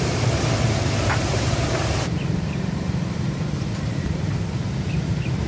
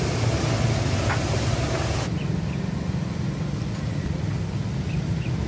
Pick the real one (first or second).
second